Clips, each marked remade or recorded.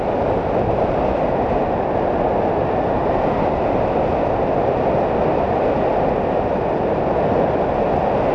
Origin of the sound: recorded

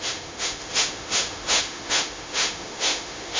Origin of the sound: remade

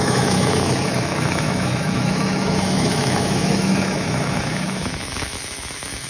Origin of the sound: remade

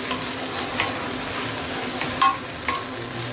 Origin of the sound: recorded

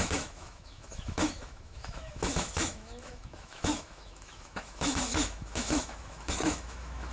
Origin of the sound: remade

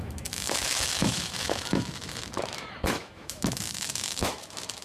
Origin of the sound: remade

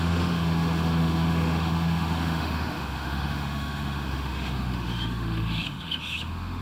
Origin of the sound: remade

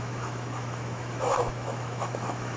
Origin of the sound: remade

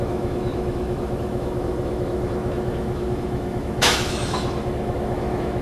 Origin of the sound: remade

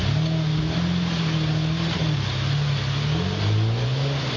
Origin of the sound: recorded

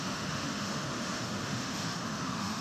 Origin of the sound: remade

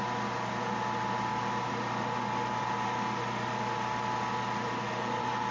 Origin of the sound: recorded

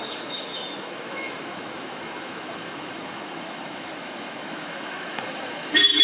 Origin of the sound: remade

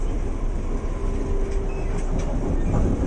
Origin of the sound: recorded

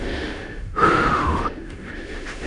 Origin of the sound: remade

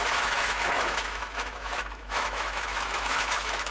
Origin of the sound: remade